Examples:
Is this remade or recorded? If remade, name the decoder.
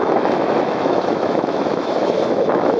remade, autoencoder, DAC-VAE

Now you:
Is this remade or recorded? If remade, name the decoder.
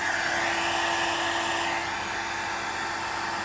recorded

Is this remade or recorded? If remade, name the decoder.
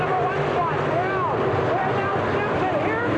recorded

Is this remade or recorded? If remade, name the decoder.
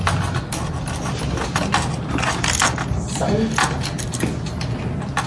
recorded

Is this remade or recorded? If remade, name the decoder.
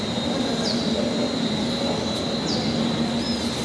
recorded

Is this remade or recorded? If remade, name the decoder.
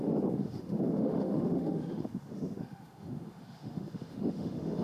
remade, autoencoder, DAC-VAE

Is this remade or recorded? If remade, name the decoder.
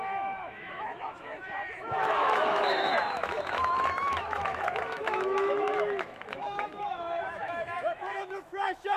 remade, autoencoder, DAC-VAE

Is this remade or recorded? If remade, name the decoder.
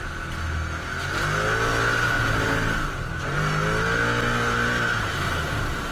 recorded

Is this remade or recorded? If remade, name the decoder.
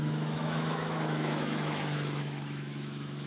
remade, autoencoder, DAC-VAE